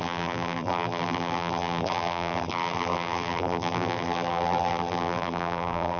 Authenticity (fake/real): fake